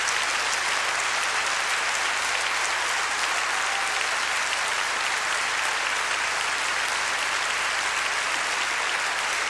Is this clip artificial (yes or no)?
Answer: no